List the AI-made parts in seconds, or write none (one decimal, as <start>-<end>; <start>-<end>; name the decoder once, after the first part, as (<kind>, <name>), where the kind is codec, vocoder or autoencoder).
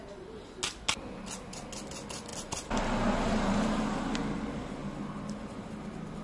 none